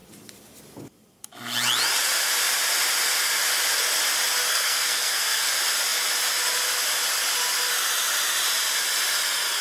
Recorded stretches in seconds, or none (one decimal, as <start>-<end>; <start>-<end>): 0.0-4.5; 5.5-9.6